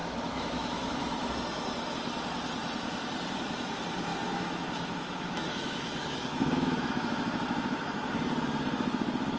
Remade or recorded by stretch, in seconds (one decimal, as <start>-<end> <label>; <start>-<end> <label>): 0.0-1.3 remade; 1.3-4.1 recorded; 4.1-8.1 remade; 8.1-9.4 recorded